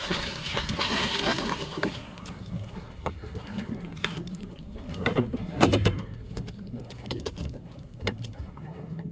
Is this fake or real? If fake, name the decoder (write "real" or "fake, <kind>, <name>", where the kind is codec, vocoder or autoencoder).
fake, codec, SNAC